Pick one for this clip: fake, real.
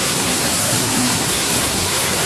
fake